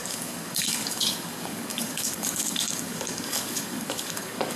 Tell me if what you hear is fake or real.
fake